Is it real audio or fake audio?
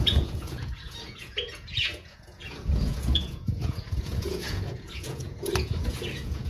fake